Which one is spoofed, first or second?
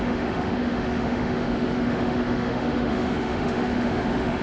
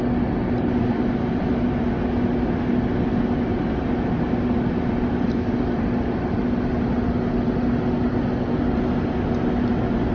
first